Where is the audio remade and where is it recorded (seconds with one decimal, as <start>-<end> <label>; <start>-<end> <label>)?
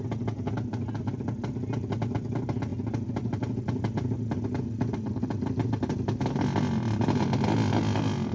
0.0-8.3 recorded